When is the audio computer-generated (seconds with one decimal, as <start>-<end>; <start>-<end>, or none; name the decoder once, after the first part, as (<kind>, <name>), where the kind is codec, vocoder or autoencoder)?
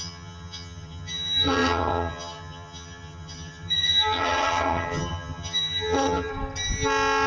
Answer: 0.0-6.3 (vocoder, HiFi-GAN)